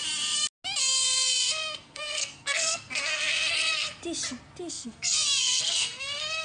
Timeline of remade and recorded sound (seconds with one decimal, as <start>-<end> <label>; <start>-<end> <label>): 0.0-0.8 recorded; 0.8-4.0 remade; 4.0-4.7 recorded; 4.7-6.4 remade